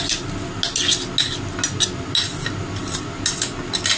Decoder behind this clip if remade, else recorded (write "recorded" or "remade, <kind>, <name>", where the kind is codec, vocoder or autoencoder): recorded